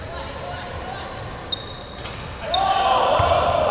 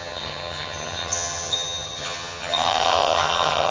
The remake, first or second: second